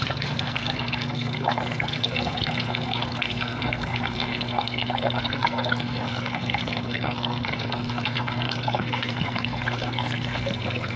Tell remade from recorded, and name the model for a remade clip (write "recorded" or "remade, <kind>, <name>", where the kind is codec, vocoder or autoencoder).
remade, codec, SNAC